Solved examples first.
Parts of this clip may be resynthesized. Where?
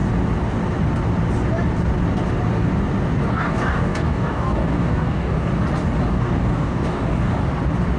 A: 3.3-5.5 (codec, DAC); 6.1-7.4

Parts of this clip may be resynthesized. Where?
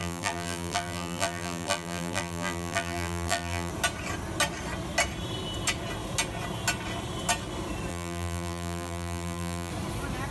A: 0.0-3.7 (vocoder, BigVGAN v2); 7.9-9.7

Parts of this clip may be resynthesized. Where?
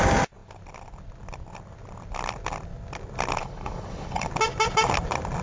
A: 3.4-4.3 (codec, HILCodec)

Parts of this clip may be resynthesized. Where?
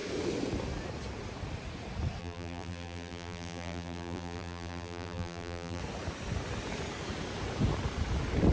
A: 2.2-5.8 (vocoder, BigVGAN v2)